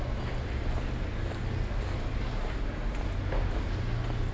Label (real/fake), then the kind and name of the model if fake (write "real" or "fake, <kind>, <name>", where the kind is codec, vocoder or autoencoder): real